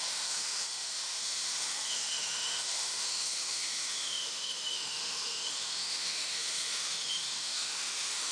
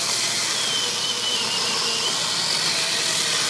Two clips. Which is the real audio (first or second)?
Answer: second